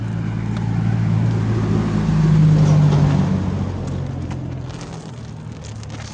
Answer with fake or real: real